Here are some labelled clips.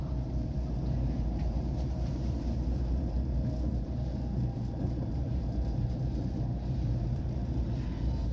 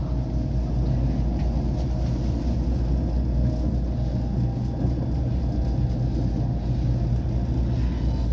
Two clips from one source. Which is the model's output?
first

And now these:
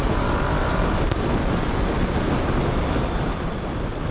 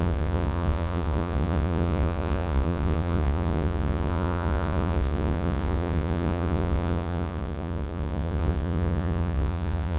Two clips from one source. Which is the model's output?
second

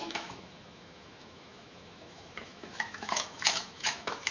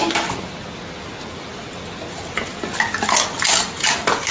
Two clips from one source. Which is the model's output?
first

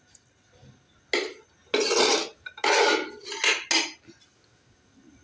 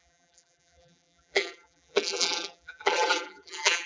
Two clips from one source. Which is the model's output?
second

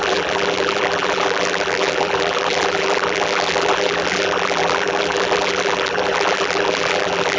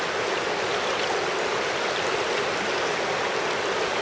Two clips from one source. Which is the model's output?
first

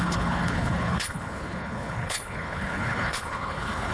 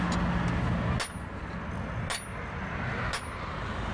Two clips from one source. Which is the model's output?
first